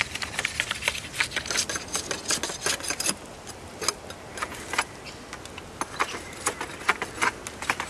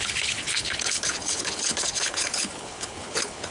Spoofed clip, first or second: second